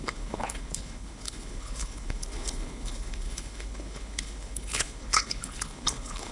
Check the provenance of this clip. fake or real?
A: fake